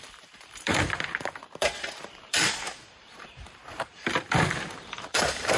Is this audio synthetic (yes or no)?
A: yes